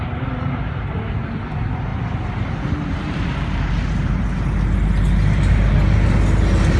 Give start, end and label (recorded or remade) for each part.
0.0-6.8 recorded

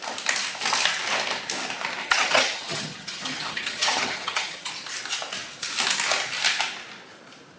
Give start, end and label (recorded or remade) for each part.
0.0-2.0 recorded; 2.0-4.7 remade; 4.7-7.6 recorded

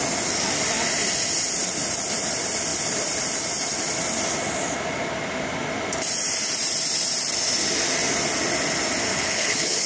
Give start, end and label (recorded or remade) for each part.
0.0-9.1 recorded; 9.1-9.9 remade

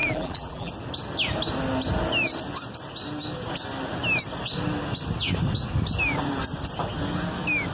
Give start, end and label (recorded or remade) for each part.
0.0-0.7 remade; 0.7-7.7 recorded

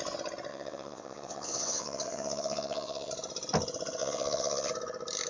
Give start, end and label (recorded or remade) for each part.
0.0-0.5 recorded; 0.5-3.1 remade; 3.1-4.0 recorded; 4.0-4.7 remade; 4.7-5.3 recorded